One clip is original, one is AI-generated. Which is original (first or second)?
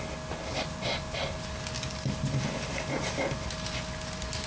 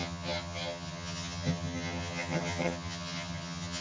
first